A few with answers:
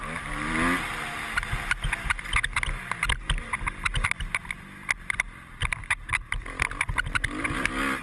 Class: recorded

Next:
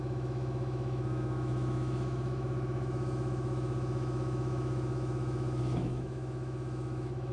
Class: remade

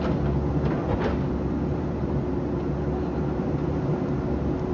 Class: recorded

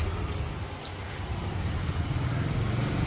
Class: recorded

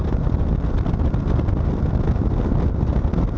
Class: recorded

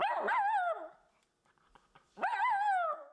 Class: recorded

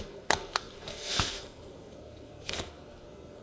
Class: remade